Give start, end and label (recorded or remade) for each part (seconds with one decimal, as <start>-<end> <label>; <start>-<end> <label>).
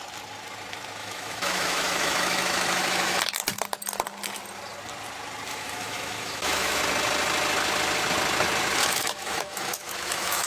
0.0-1.0 recorded; 1.0-3.2 remade; 3.2-5.5 recorded; 5.5-6.8 remade; 6.8-8.8 recorded; 8.8-10.5 remade